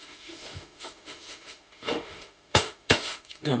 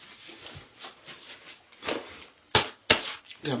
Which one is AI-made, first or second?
first